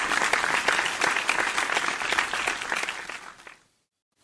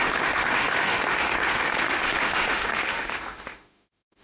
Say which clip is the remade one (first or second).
second